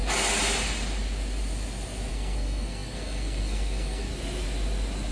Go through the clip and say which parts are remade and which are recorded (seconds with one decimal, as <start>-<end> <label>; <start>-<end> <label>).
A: 0.0-2.1 recorded; 2.1-4.1 remade; 4.1-5.1 recorded